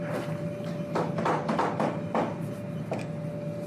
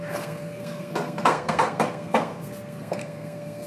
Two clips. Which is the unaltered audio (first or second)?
first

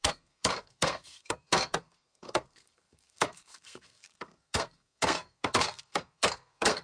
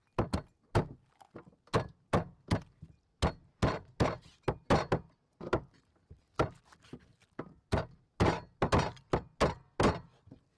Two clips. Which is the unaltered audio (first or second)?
second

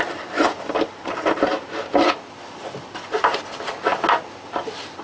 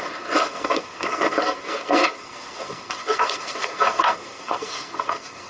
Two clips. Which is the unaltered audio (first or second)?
first